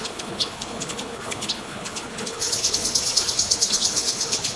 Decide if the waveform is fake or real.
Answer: fake